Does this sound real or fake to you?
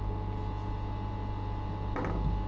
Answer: real